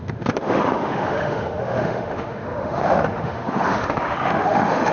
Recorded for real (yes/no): no